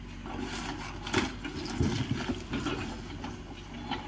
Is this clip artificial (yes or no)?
no